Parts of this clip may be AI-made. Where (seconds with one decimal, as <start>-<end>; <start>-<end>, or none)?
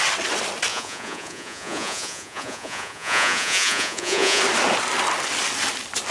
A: 0.7-4.4